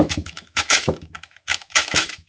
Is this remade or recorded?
remade